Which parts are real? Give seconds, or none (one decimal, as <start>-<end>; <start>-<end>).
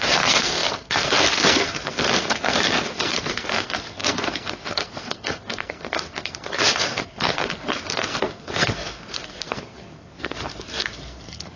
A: none